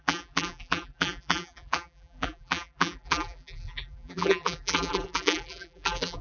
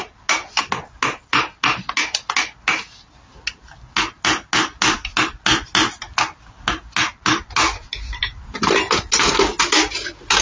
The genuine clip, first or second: second